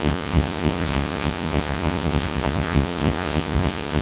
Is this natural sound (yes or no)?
no